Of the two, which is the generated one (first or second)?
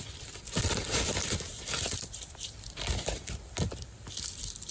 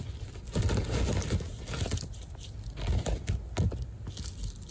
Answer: first